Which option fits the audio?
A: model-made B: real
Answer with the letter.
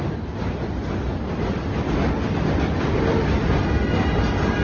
B